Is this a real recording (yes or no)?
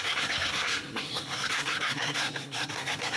no